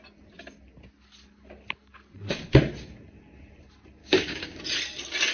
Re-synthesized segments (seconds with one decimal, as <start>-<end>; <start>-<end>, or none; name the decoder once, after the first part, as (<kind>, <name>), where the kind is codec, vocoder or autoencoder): 4.0-4.6 (codec, DAC)